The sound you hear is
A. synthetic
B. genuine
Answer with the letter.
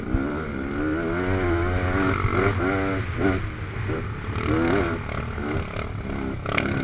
B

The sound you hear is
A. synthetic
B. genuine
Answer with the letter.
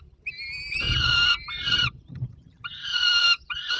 A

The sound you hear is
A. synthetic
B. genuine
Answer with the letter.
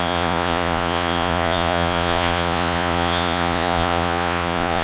A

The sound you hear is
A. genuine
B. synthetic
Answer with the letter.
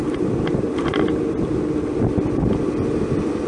A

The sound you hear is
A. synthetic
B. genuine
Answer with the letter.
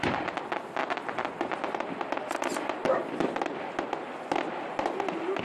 B